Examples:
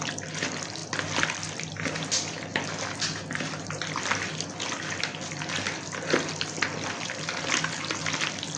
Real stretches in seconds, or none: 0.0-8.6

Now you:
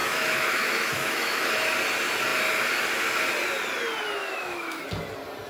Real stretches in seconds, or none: 1.5-4.2; 4.8-5.5

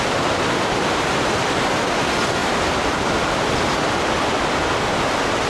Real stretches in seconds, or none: 0.0-2.4

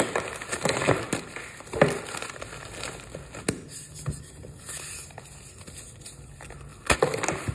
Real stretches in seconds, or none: 0.0-7.5

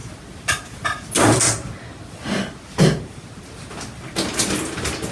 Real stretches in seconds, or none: 0.0-5.1